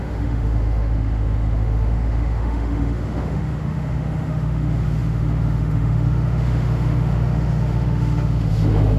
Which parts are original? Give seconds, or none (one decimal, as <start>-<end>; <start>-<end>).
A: none